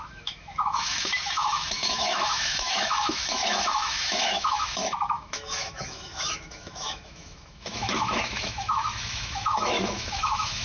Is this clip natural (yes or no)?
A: no